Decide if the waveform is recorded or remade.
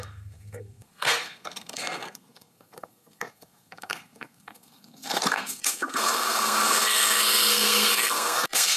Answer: remade